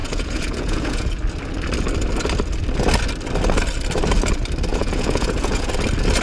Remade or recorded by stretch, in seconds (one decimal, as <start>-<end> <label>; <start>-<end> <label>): 0.0-1.2 remade; 1.2-4.7 recorded; 4.7-5.7 remade; 5.7-6.2 recorded